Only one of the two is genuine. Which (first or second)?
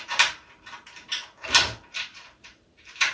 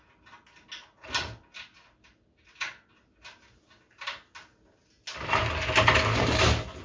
second